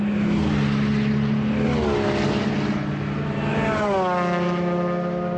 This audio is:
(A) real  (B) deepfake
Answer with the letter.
A